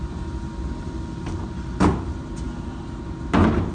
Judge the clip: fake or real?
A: real